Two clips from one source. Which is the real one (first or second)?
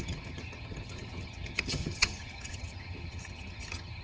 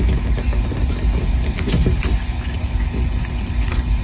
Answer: second